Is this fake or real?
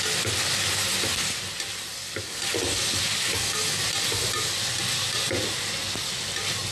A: real